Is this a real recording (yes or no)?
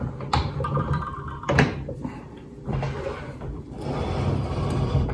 no